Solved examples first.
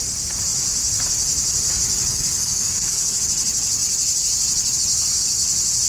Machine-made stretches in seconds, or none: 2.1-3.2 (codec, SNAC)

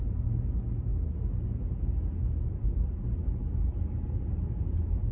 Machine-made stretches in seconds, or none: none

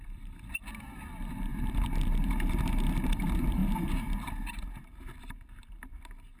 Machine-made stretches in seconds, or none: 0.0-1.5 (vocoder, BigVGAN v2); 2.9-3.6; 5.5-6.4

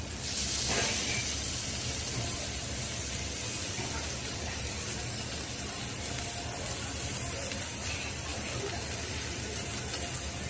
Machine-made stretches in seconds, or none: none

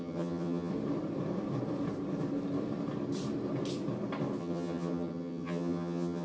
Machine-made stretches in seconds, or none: 0.0-0.7 (vocoder, HiFi-GAN); 4.4-6.2

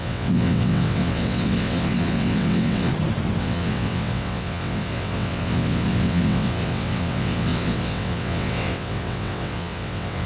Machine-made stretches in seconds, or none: 0.0-2.9 (vocoder, WaveNeXt); 3.4-10.3

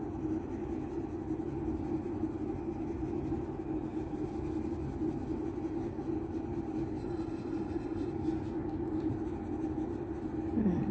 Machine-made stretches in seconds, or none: 7.0-8.1 (vocoder, Vocos)

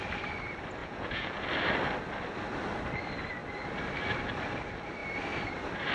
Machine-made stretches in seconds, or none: 0.8-1.4 (vocoder, Vocos)